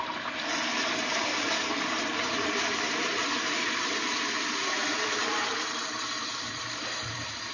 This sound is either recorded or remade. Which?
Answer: remade